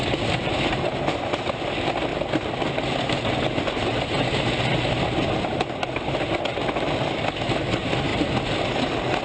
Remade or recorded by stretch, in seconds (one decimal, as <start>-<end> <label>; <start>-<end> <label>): 0.0-2.1 recorded; 2.1-2.8 remade; 2.8-9.2 recorded